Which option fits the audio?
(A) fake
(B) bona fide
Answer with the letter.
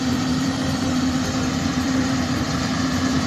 A